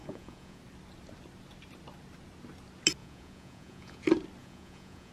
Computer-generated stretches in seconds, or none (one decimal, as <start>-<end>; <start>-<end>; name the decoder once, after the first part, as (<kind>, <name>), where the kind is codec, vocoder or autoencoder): 0.0-0.6 (vocoder, Vocos); 3.0-4.0; 4.4-5.1